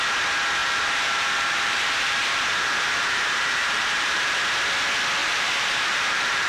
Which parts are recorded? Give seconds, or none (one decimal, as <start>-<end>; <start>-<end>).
0.0-0.6; 4.4-5.2